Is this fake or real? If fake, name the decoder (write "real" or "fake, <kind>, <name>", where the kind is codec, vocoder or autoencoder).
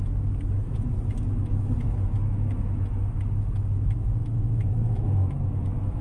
fake, autoencoder, DAC-VAE